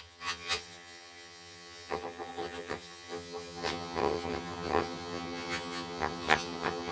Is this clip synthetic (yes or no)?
yes